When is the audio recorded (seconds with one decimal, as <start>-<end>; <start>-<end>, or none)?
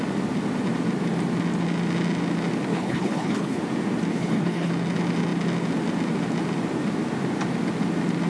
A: 0.0-2.7; 3.6-4.1; 4.7-8.3